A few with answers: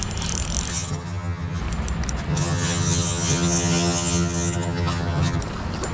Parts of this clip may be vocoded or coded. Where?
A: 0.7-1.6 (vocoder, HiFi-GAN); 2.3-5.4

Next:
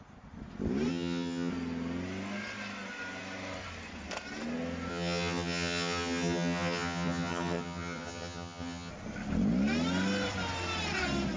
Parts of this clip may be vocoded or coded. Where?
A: 0.9-1.5 (vocoder, HiFi-GAN); 4.9-8.9

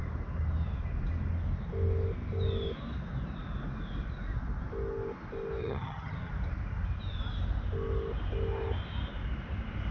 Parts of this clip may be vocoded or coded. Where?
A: 5.6-6.3 (vocoder, HiFi-GAN)